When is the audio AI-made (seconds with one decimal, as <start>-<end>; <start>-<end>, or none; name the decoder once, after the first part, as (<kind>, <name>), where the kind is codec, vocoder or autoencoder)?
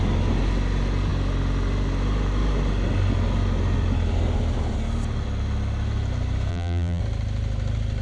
6.5-7.0 (vocoder, BigVGAN v2)